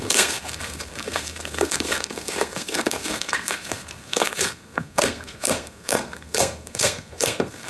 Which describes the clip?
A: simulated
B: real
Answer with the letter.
A